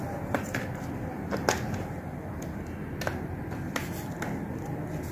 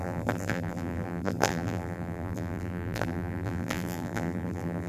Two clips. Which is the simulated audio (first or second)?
second